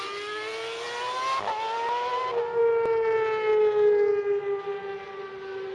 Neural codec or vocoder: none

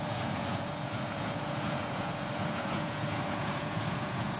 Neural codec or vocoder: vocoder, Vocos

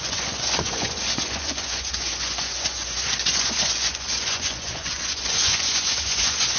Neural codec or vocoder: vocoder, Vocos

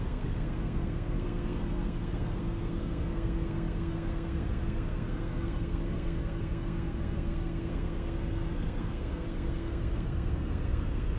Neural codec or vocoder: codec, SNAC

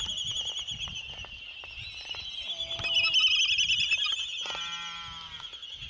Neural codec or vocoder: none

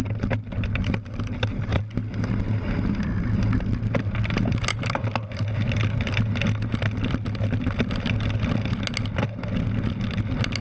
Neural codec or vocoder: none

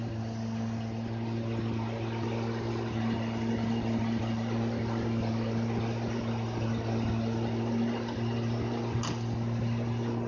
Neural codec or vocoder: none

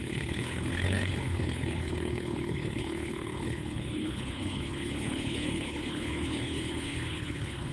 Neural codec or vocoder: codec, HILCodec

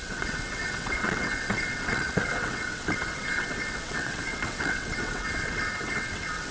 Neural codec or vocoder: vocoder, WaveNeXt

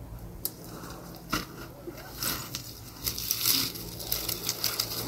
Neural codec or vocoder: none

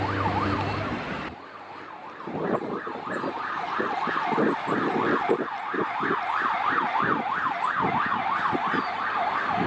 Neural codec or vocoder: none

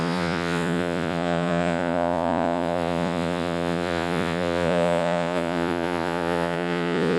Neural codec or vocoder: vocoder, Vocos